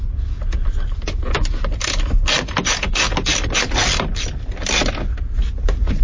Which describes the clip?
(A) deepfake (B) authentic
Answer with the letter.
B